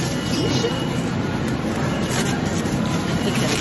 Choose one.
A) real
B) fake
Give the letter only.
A